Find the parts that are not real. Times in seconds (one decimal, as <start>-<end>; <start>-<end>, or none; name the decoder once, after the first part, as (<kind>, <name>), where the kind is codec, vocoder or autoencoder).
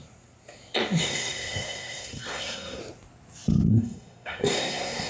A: 1.0-2.8 (codec, SNAC); 3.7-5.1